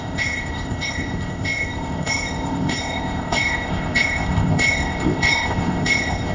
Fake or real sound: fake